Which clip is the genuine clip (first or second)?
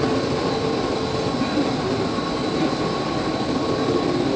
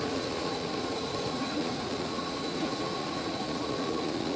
first